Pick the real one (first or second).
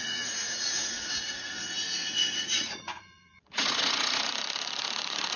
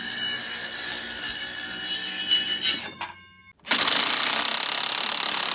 second